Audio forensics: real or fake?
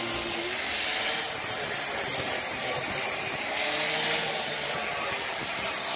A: real